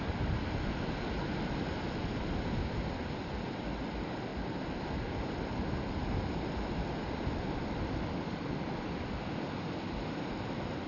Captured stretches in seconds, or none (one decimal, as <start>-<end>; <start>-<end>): 0.0-10.9